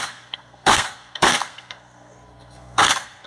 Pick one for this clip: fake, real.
fake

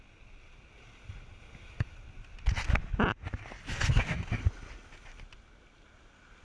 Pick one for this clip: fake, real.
real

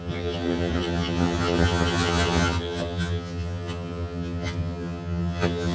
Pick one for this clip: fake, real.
fake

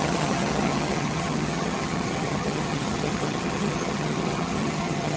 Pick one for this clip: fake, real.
fake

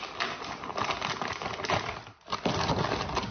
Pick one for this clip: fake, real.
real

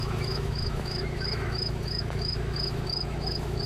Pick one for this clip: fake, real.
fake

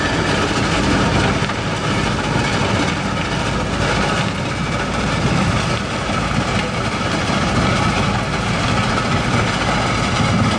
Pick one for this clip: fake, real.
real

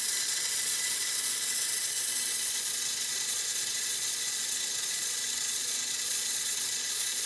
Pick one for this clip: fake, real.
fake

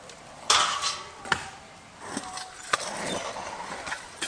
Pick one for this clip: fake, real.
real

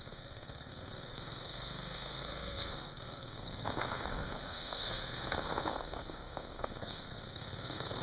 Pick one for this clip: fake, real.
fake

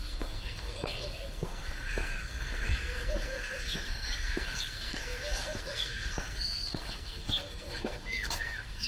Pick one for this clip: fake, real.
fake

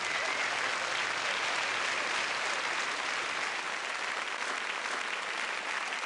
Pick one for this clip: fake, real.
real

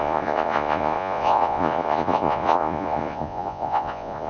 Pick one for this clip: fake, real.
fake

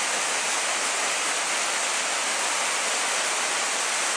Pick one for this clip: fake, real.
real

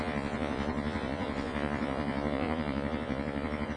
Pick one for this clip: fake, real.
fake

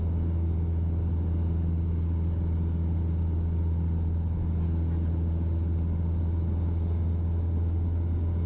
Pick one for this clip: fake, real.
real